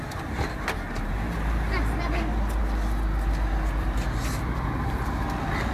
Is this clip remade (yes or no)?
no